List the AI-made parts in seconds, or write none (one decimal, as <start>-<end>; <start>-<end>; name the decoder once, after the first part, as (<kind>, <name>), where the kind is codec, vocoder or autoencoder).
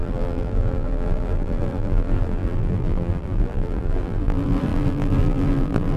0.0-6.0 (vocoder, BigVGAN v2)